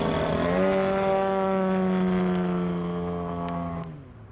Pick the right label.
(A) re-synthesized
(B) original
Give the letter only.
B